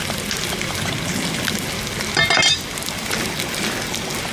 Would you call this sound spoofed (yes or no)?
no